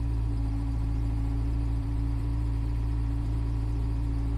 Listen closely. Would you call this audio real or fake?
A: fake